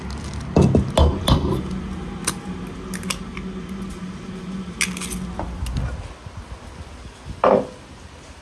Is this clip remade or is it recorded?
recorded